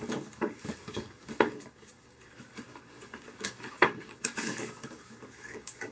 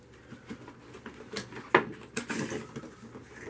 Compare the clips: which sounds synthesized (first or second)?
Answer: first